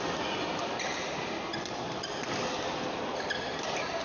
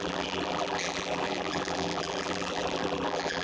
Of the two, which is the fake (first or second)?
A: second